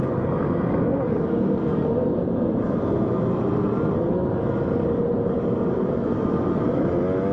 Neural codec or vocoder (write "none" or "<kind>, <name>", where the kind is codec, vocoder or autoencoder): none